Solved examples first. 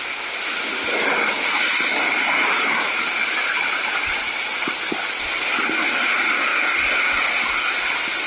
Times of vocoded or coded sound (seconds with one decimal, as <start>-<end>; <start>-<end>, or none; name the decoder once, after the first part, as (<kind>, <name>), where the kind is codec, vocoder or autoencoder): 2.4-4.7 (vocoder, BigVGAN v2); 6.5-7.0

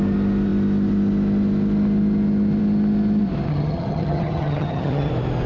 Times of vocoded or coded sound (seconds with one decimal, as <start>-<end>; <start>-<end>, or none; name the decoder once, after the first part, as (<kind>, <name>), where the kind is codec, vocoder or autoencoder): 3.5-5.1 (vocoder, HiFi-GAN)

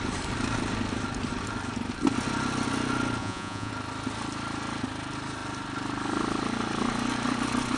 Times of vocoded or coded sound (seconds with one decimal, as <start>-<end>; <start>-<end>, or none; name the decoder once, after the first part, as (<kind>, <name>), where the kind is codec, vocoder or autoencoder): 3.2-3.7 (vocoder, Vocos)